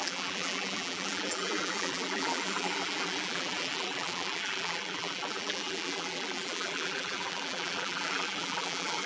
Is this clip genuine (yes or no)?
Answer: no